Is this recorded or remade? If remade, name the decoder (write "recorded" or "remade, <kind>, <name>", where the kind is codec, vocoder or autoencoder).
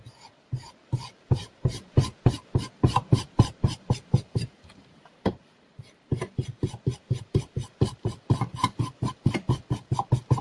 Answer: remade, vocoder, BigVGAN v2